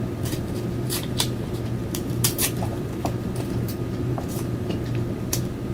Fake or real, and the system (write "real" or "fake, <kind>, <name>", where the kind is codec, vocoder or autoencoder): fake, vocoder, BigVGAN v2